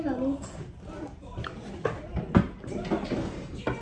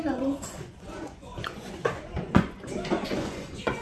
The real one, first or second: first